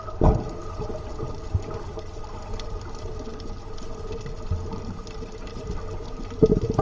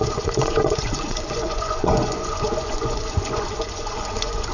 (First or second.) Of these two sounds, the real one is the first